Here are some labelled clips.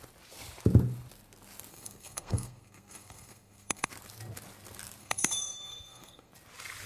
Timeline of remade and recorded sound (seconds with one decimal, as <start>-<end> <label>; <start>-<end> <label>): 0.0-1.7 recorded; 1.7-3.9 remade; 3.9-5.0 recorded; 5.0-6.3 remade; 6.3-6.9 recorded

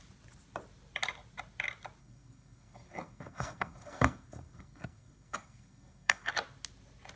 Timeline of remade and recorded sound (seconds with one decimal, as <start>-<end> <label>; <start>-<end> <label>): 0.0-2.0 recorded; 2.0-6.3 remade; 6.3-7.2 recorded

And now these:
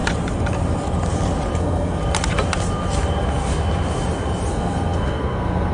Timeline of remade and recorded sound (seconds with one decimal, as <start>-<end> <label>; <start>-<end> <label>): 0.0-1.6 recorded; 1.6-2.0 remade; 2.0-4.5 recorded; 4.5-5.7 remade